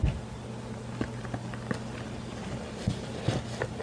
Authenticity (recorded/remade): recorded